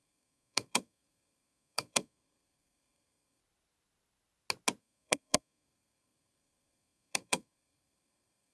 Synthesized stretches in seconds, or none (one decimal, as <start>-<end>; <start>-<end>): 0.0-3.4; 4.8-8.5